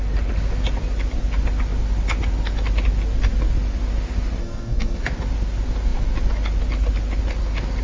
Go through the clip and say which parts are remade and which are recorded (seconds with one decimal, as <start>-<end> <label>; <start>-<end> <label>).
0.0-4.4 recorded; 4.4-5.0 remade; 5.0-7.8 recorded